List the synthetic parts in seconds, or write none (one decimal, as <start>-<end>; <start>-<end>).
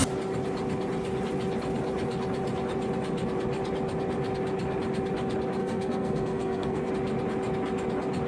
5.6-6.9